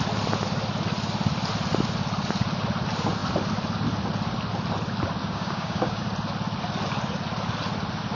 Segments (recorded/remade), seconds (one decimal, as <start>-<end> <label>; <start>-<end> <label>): 0.0-5.2 recorded; 5.2-6.0 remade; 6.0-8.1 recorded